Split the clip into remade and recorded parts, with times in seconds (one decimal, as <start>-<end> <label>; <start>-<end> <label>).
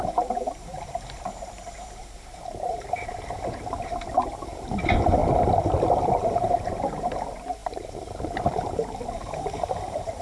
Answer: 0.0-5.2 remade; 5.2-6.1 recorded; 6.1-10.2 remade